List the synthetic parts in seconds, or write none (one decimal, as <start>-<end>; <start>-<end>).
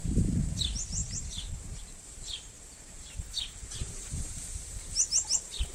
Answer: 1.0-4.4